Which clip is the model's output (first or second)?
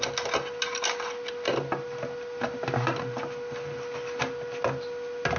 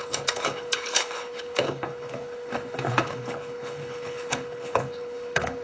second